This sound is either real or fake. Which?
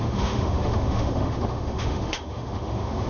fake